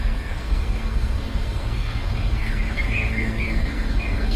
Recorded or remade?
remade